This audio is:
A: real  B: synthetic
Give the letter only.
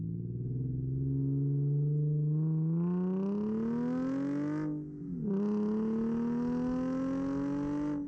A